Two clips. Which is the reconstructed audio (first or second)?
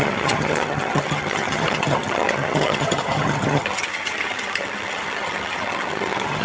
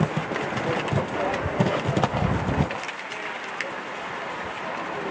first